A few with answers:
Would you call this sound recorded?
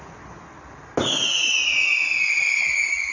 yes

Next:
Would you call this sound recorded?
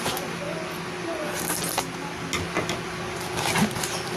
yes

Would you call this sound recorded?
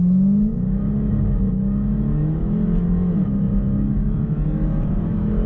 no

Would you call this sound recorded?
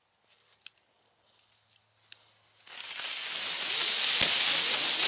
yes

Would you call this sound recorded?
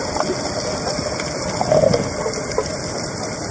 yes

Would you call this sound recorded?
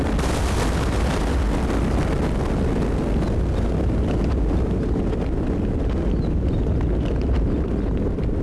yes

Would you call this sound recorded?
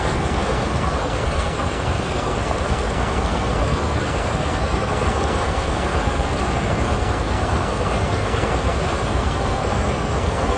no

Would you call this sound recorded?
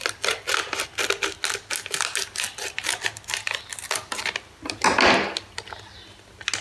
yes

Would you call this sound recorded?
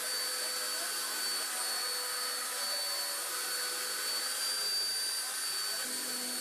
yes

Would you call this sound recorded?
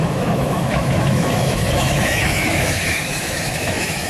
no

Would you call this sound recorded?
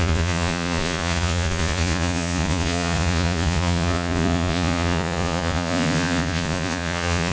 no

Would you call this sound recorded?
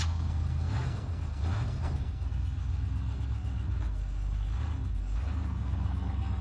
no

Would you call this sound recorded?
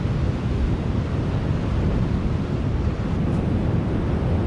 yes